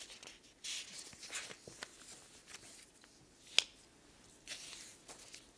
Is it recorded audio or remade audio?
recorded